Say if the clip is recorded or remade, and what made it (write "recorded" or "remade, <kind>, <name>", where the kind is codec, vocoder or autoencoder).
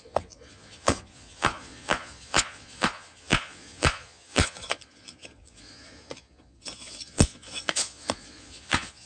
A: remade, vocoder, Vocos